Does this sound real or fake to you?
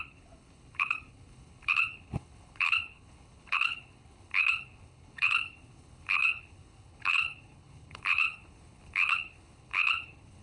fake